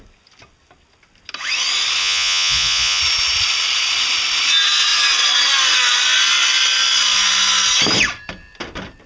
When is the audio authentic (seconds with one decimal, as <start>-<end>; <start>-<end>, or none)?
0.0-2.0; 3.0-9.1